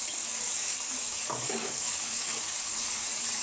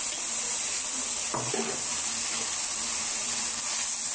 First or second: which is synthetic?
first